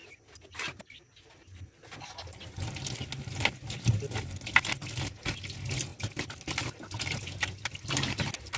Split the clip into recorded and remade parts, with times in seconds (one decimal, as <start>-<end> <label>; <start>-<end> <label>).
0.0-8.6 recorded